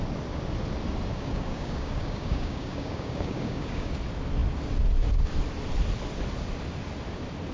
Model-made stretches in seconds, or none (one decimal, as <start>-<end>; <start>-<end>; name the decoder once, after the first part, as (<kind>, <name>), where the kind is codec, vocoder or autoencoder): 1.1-3.9 (codec, DAC)